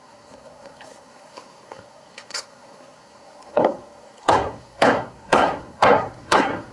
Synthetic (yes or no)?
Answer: yes